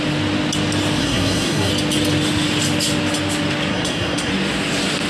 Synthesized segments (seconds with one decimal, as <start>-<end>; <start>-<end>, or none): 1.0-1.7; 3.7-4.3